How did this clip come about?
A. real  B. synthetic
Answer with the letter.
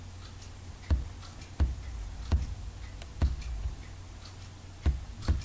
A